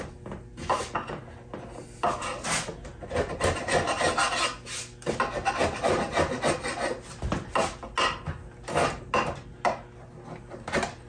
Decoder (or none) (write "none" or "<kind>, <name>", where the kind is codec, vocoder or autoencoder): none